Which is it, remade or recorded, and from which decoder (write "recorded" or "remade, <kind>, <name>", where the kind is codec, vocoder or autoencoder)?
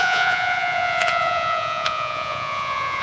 remade, vocoder, Vocos